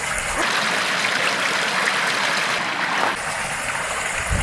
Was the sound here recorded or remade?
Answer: recorded